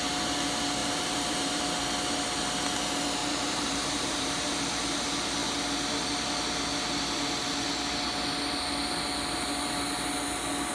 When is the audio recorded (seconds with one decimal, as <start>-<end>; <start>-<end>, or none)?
0.0-0.8; 1.6-3.2; 4.3-10.7